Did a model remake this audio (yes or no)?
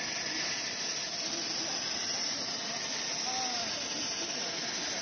no